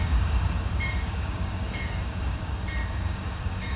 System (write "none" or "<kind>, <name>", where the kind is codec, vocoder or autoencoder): codec, DAC